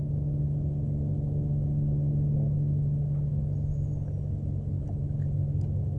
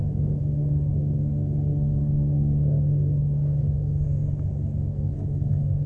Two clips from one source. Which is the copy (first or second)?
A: second